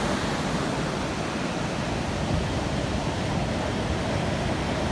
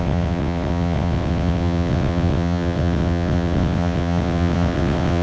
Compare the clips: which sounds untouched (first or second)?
first